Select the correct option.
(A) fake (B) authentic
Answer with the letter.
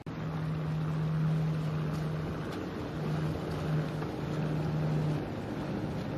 B